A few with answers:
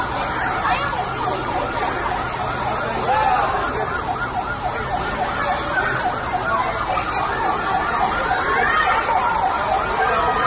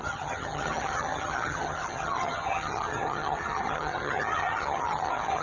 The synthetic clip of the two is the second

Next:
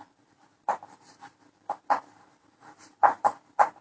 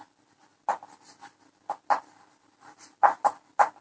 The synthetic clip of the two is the first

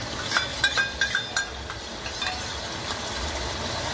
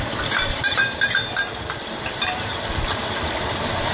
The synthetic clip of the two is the second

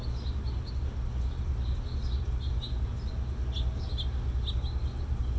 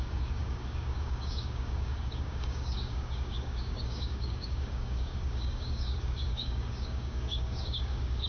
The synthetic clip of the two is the second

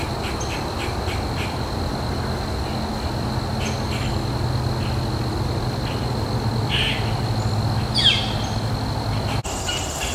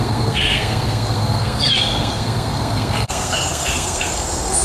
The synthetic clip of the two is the second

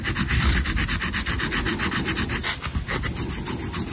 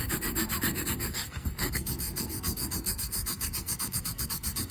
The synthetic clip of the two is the second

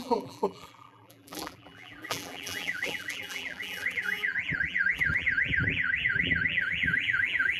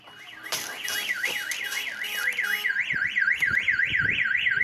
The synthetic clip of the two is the first